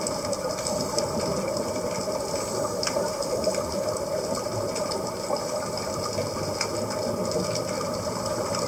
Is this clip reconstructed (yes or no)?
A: no